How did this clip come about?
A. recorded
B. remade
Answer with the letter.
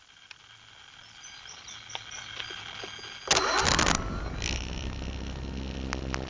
A